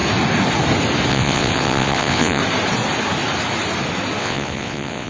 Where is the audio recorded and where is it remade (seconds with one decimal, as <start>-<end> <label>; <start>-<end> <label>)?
0.0-1.1 recorded; 1.1-2.4 remade; 2.4-4.2 recorded; 4.2-5.1 remade